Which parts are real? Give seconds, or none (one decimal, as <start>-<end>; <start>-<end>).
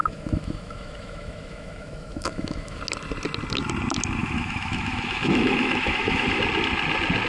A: 2.8-4.2; 6.4-7.3